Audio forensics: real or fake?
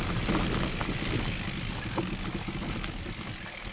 real